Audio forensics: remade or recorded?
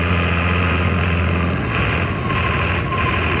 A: remade